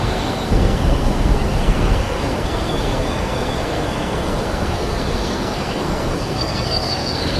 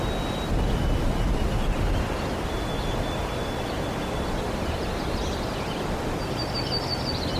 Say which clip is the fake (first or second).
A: first